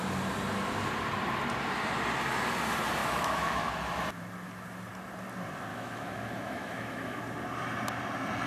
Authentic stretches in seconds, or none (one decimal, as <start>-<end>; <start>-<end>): 0.0-3.0; 3.7-5.7; 7.2-8.5